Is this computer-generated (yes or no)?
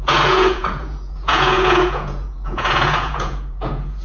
yes